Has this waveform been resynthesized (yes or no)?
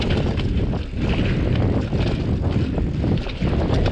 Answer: no